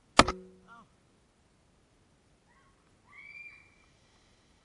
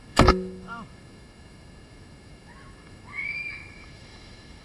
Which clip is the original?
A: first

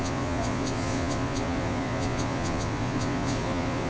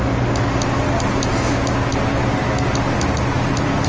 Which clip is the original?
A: second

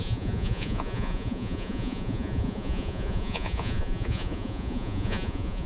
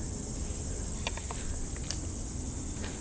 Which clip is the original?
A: second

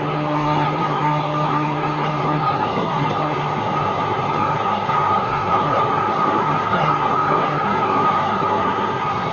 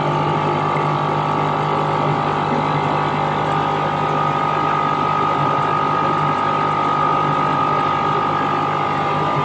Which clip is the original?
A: second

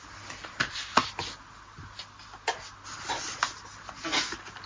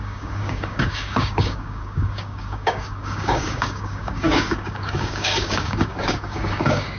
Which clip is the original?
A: first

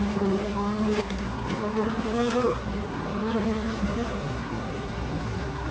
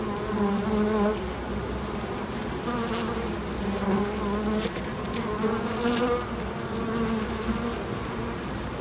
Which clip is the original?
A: second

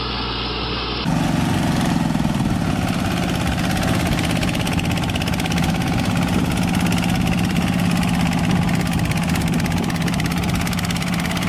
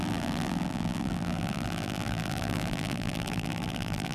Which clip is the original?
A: first